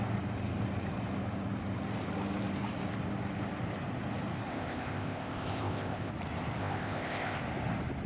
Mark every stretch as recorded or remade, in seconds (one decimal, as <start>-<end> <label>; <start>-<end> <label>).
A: 0.0-4.5 recorded; 4.5-6.1 remade; 6.1-6.6 recorded; 6.6-7.4 remade; 7.4-8.1 recorded